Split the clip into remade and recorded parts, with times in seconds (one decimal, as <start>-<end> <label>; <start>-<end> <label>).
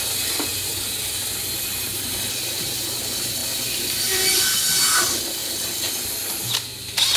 0.0-0.5 recorded; 0.5-1.3 remade; 1.3-3.4 recorded; 3.4-4.3 remade; 4.3-5.4 recorded; 5.4-5.9 remade; 5.9-7.2 recorded